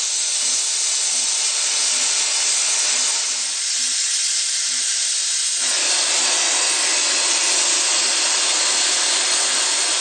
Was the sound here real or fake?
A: real